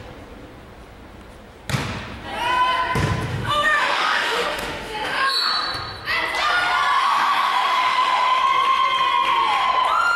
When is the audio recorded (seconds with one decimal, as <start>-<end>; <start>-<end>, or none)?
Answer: 0.0-3.3; 5.5-7.0; 8.4-10.2